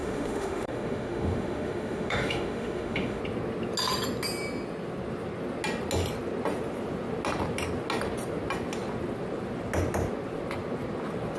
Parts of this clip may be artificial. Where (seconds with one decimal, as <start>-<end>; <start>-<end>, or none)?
0.0-3.2